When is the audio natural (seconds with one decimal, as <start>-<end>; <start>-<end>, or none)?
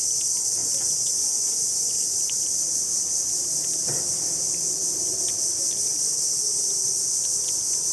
0.0-0.6; 1.9-7.9